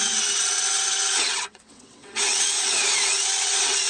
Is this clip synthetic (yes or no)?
yes